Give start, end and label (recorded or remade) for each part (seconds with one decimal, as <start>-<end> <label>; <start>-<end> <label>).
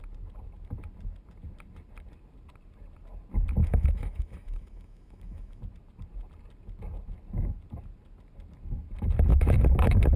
0.0-3.6 recorded; 3.6-5.6 remade; 5.6-9.3 recorded; 9.3-10.2 remade